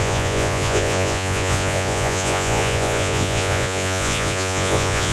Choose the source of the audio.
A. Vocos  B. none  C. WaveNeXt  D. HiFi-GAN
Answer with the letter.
A